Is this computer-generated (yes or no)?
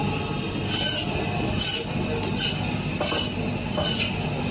no